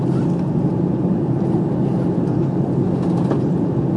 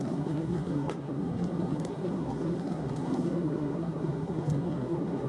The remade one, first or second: second